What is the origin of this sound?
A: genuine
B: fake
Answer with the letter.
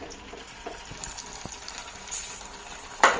A